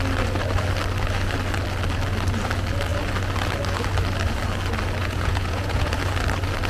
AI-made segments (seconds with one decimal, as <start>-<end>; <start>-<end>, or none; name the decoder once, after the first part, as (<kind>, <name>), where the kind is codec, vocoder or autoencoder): 5.0-6.0 (vocoder, Vocos)